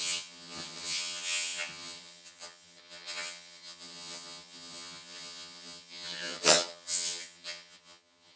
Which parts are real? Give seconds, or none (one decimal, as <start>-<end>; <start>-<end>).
none